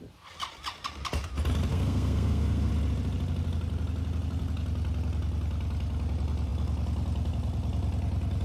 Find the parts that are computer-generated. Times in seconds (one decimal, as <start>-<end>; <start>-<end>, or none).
1.7-2.7